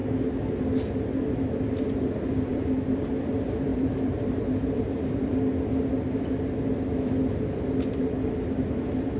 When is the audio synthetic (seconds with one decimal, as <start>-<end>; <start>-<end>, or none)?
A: 2.5-3.1; 3.7-5.3